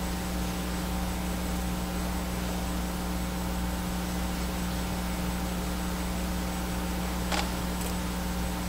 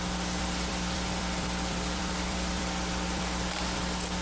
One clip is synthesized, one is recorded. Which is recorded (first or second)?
first